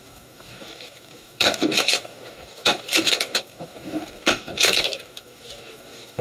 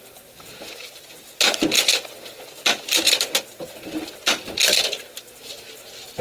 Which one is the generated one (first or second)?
first